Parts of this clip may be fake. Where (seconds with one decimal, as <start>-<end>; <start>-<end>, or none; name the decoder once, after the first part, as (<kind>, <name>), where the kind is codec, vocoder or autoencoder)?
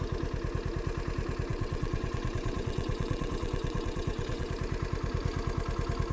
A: 1.5-4.5 (vocoder, WaveNeXt)